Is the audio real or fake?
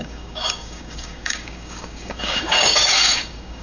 fake